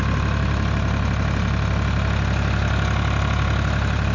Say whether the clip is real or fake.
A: real